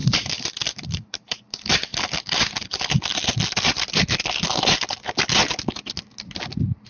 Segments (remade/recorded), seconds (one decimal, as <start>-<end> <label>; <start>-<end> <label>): 0.0-1.5 remade; 1.5-6.9 recorded